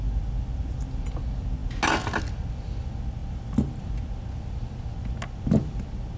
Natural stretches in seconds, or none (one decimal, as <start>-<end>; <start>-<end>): 0.0-6.2